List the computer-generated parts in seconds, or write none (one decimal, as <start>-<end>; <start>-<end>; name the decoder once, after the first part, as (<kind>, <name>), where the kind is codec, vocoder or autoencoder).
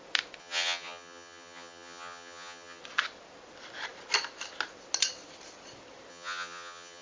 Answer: 0.4-2.8 (vocoder, HiFi-GAN); 6.1-7.0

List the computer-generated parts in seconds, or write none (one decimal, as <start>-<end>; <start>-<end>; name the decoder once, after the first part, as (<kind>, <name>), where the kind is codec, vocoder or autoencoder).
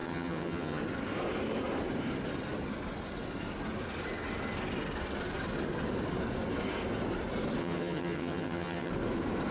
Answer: 0.0-0.8 (vocoder, HiFi-GAN); 7.6-8.9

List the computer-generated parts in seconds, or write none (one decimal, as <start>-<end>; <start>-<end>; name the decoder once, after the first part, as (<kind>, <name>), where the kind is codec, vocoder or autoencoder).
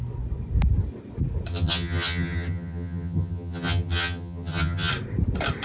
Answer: 1.5-4.9 (vocoder, HiFi-GAN)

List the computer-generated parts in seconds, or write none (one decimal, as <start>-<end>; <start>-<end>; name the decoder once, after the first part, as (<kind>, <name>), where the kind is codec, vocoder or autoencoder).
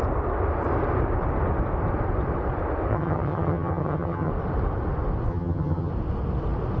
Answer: 2.9-4.3 (vocoder, HiFi-GAN); 5.3-5.9